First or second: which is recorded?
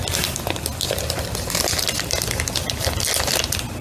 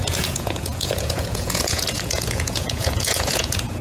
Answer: first